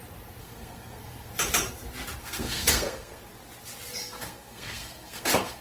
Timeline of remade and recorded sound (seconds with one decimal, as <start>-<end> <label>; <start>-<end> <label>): 0.0-0.4 recorded; 0.4-1.3 remade; 1.3-2.2 recorded; 2.2-3.2 remade; 3.2-4.0 recorded; 4.0-5.6 remade